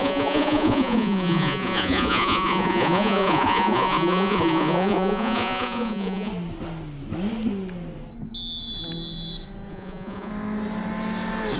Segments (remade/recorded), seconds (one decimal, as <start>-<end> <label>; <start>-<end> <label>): 0.0-6.3 remade; 6.3-9.7 recorded; 9.7-10.3 remade; 10.3-11.6 recorded